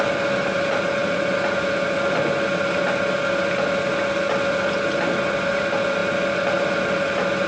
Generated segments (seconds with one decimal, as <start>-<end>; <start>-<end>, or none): none